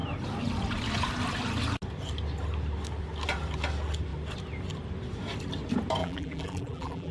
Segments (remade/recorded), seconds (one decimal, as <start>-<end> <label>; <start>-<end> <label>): 0.0-6.0 recorded; 6.0-7.1 remade